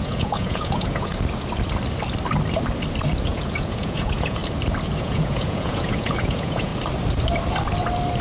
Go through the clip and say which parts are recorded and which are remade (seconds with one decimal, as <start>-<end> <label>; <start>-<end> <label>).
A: 0.0-1.1 remade; 1.1-3.2 recorded; 3.2-4.4 remade; 4.4-5.0 recorded; 5.0-6.7 remade; 6.7-8.2 recorded